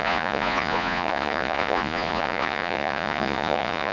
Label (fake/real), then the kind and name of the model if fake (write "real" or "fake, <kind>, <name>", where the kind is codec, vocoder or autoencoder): fake, vocoder, Vocos